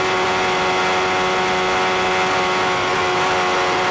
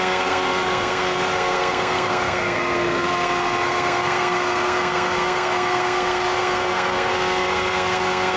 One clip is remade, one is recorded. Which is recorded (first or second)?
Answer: first